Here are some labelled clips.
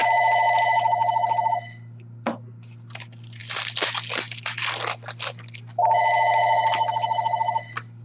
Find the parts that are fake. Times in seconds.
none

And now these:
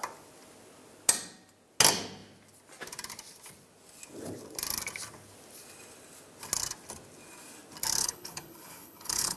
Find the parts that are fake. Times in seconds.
8.0-9.4 (codec, HILCodec)

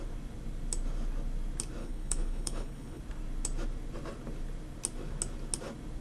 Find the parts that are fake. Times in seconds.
1.8-3.0 (codec, HILCodec)

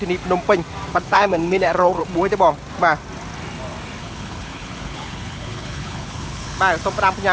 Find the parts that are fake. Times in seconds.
0.9-2.0 (codec, HILCodec); 4.0-6.6

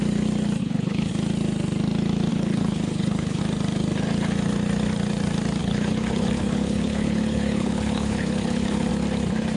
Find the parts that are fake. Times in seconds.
0.6-1.1 (codec, HILCodec); 2.3-3.4; 5.6-8.9

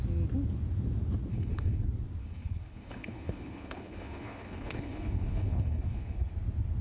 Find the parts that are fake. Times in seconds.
1.3-1.8 (codec, HILCodec); 2.2-6.3

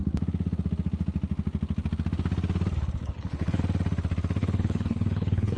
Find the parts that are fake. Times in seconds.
3.0-3.6 (codec, HILCodec); 4.4-5.6